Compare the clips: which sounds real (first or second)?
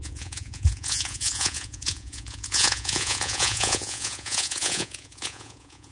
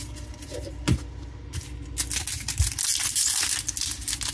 second